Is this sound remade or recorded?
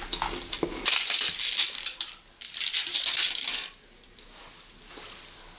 recorded